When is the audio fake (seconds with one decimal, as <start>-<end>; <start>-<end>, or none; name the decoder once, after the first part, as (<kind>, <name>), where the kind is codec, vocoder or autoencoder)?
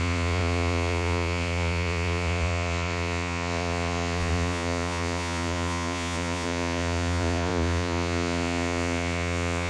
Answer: 0.0-9.7 (vocoder, Vocos)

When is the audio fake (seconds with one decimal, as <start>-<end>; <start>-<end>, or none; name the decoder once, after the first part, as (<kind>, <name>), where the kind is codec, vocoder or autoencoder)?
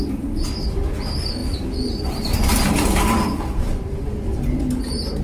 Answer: none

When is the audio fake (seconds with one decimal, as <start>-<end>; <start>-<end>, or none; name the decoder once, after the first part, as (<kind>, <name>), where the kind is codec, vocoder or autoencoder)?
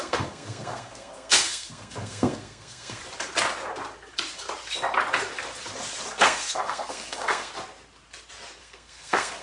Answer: 0.0-3.0 (codec, SNAC); 6.2-7.5; 8.6-9.4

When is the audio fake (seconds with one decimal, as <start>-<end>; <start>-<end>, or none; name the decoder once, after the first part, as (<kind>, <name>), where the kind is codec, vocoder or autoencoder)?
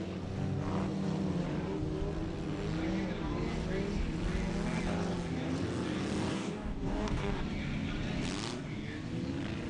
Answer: 6.3-7.4 (codec, DAC)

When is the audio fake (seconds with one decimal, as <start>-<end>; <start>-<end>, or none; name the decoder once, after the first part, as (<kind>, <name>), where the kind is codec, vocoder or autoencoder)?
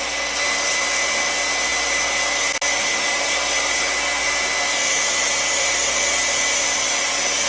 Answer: none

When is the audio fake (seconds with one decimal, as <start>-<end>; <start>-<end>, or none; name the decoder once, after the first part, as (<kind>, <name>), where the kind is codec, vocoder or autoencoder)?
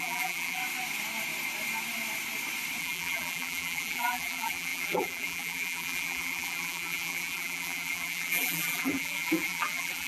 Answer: 0.0-0.6 (vocoder, BigVGAN v2); 2.8-10.1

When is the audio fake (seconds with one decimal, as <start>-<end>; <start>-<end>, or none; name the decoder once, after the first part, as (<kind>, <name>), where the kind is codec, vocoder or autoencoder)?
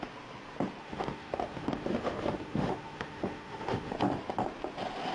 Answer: 0.8-3.9 (autoencoder, DAC-VAE)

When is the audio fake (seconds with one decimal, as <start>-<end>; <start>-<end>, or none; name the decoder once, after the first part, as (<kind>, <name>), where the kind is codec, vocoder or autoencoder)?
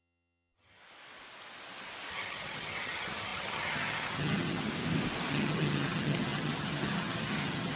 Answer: 0.0-0.8 (vocoder, HiFi-GAN); 2.1-4.7; 5.3-7.8